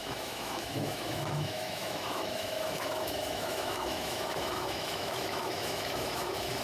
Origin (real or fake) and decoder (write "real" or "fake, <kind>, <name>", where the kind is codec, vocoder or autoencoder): fake, autoencoder, DAC-VAE